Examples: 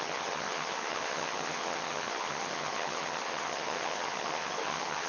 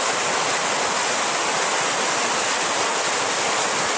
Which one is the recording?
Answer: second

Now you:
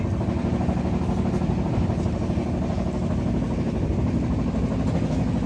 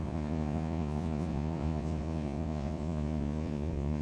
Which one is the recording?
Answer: first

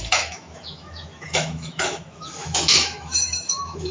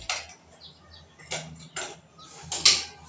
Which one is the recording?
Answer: second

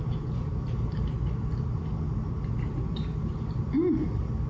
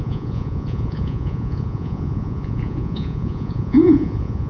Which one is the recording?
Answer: first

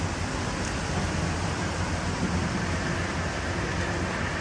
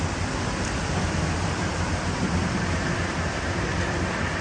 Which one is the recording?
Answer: first